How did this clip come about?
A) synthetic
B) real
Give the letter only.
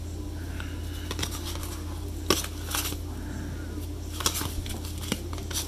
B